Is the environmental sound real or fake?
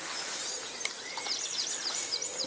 fake